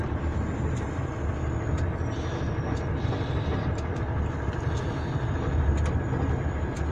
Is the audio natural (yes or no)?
yes